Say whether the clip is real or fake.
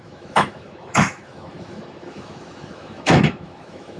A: fake